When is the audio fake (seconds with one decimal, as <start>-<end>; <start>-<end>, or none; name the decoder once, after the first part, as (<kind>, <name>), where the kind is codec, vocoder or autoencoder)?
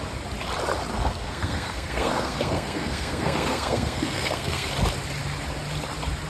0.9-4.7 (codec, SNAC)